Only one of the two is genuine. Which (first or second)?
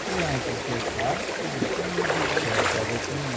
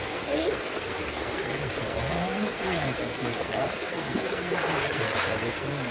first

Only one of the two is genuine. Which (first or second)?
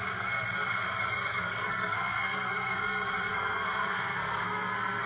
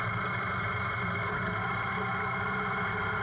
second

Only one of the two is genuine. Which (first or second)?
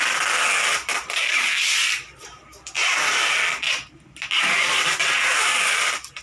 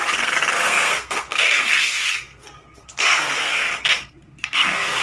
first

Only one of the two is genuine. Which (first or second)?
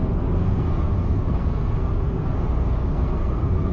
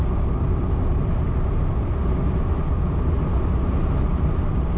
second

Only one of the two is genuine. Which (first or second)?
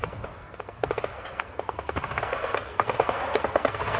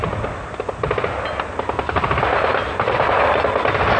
second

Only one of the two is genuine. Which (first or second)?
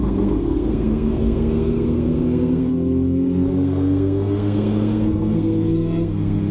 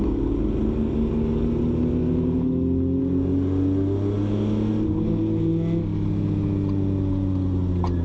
second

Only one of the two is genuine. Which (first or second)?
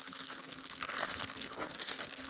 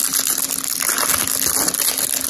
second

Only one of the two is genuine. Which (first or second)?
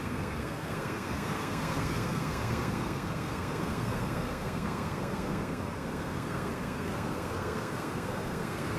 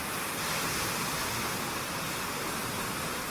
second